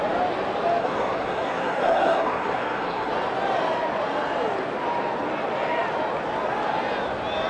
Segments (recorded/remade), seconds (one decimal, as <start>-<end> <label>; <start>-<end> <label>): 0.0-0.8 recorded; 0.8-3.1 remade; 3.1-7.5 recorded